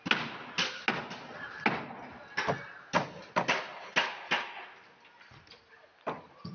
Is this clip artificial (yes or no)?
no